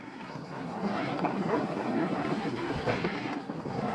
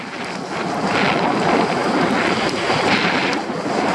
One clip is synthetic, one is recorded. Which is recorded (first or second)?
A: second